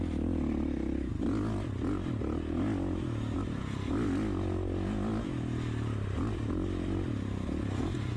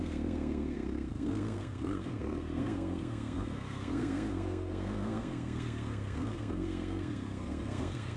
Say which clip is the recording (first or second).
first